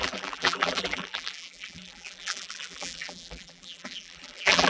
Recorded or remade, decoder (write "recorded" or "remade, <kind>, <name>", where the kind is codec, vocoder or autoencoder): remade, vocoder, BigVGAN v2